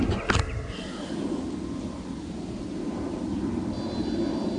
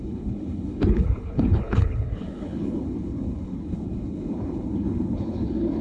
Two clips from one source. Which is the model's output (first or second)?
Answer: second